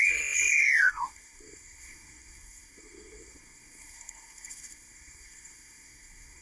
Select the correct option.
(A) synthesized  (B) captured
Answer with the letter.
A